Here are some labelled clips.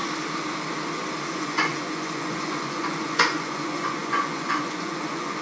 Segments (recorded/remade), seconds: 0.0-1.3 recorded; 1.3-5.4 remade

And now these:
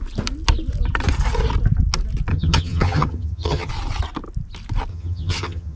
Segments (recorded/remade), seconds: 0.0-2.3 recorded; 2.3-3.7 remade; 3.7-4.9 recorded; 4.9-5.8 remade

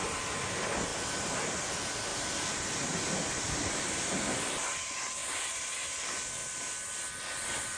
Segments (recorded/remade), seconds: 0.0-0.9 recorded; 0.9-1.4 remade; 1.4-2.1 recorded; 2.1-3.8 remade; 3.8-5.2 recorded; 5.2-6.6 remade; 6.6-7.8 recorded

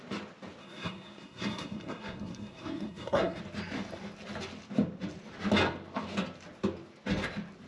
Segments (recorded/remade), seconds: 0.0-0.6 recorded; 0.6-3.4 remade; 3.4-7.7 recorded

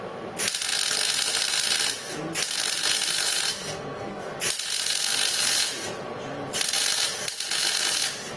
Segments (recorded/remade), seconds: 0.0-3.5 recorded; 3.5-4.2 remade; 4.2-8.4 recorded

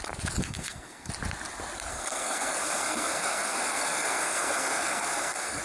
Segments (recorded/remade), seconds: 0.0-0.4 recorded; 0.4-1.1 remade; 1.1-1.9 recorded; 1.9-5.6 remade

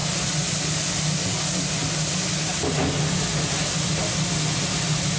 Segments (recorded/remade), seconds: 0.0-5.2 recorded

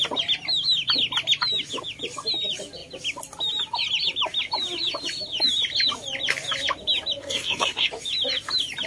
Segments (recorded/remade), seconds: 0.0-7.2 recorded; 7.2-7.9 remade; 7.9-8.9 recorded